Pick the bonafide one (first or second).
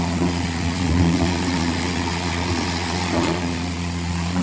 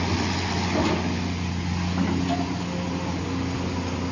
second